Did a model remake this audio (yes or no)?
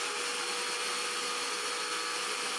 no